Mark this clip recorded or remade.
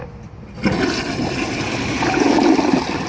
recorded